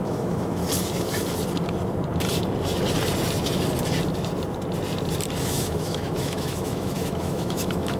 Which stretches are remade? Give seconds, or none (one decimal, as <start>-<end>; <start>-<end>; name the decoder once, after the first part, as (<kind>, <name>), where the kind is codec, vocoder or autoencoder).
0.0-0.6 (autoencoder, DAC-VAE); 5.4-8.0